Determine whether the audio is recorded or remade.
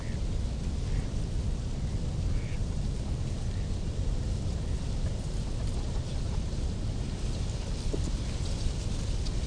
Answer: recorded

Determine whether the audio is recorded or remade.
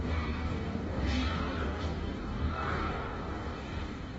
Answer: remade